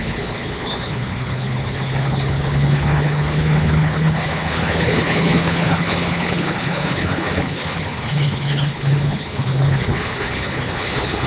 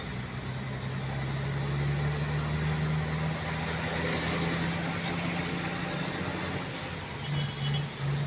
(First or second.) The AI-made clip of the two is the first